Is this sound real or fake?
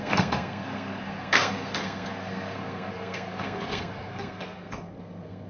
fake